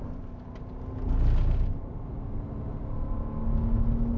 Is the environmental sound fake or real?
real